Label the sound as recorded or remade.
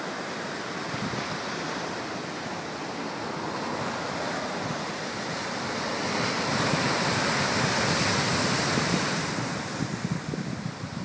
recorded